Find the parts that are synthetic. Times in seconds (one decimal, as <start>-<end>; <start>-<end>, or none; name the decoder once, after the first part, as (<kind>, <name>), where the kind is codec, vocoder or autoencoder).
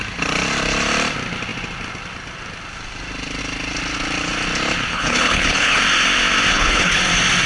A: 4.9-5.8 (codec, HILCodec); 6.5-7.0